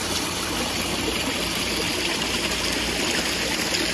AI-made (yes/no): no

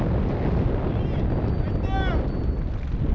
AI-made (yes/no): no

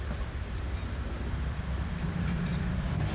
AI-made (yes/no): no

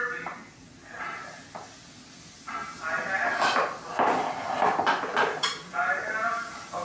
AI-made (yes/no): no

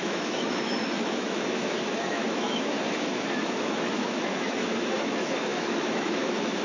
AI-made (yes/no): yes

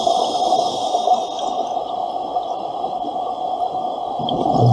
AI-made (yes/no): no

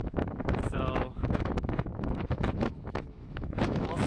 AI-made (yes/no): yes